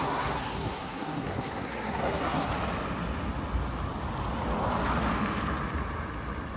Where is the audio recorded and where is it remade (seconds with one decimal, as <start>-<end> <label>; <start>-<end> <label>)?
0.0-2.5 remade; 2.5-6.6 recorded